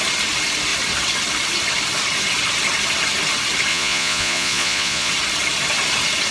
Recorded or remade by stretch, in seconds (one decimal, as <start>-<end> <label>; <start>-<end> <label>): 0.0-3.7 recorded; 3.7-5.1 remade; 5.1-6.3 recorded